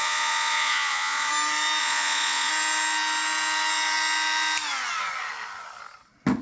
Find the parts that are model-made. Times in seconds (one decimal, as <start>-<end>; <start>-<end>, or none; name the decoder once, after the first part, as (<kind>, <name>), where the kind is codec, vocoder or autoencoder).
0.0-1.3 (vocoder, Vocos); 1.8-2.5